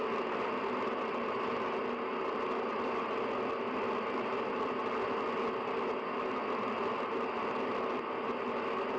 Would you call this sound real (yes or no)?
yes